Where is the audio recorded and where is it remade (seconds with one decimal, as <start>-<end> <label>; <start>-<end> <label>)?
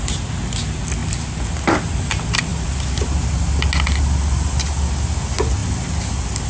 0.0-6.5 recorded